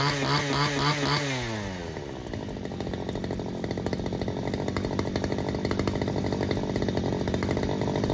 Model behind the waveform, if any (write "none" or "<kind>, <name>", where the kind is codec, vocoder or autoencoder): none